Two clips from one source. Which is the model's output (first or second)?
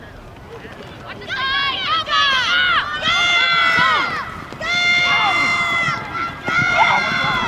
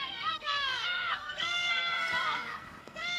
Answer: second